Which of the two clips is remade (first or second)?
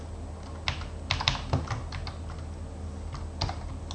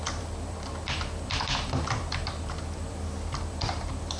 second